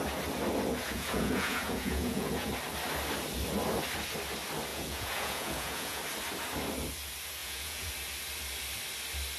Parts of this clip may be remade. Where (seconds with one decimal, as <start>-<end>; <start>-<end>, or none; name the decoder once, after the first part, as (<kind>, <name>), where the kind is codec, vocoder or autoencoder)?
0.8-2.5 (vocoder, Vocos); 4.7-6.0; 7.4-7.9

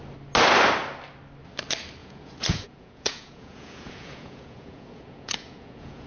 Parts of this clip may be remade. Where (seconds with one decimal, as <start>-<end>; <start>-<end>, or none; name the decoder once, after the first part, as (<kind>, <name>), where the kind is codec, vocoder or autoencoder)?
2.0-6.1 (vocoder, Vocos)

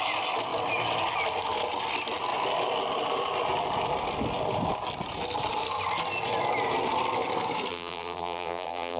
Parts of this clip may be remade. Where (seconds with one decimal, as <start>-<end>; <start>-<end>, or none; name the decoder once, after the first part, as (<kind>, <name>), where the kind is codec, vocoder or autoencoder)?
7.7-9.0 (vocoder, BigVGAN v2)

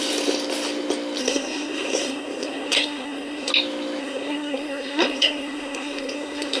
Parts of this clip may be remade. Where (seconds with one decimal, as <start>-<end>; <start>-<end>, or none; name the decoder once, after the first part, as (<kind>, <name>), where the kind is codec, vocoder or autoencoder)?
1.2-3.5 (codec, SNAC); 4.0-6.6